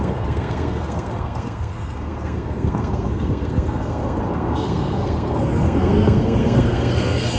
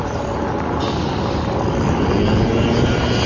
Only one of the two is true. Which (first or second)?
second